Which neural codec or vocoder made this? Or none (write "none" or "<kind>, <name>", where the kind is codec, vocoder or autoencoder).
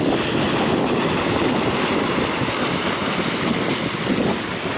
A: none